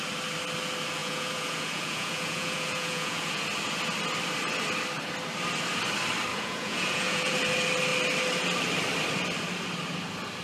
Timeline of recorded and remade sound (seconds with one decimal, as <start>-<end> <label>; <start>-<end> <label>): 0.0-1.0 recorded; 1.0-3.4 remade; 3.4-6.3 recorded; 6.3-7.3 remade; 7.3-10.4 recorded